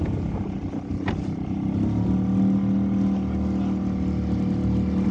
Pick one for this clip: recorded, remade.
recorded